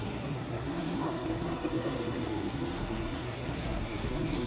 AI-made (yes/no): yes